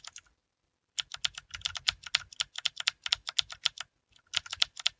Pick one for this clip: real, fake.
real